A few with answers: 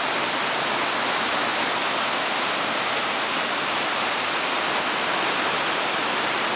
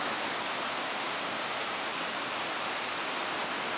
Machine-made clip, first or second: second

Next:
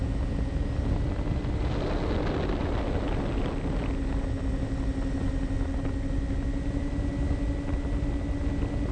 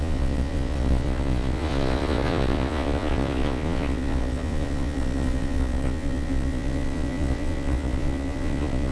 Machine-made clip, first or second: second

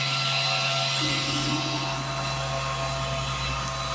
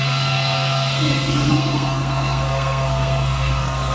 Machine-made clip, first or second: second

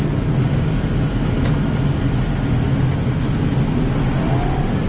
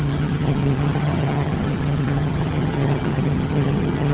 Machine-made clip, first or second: second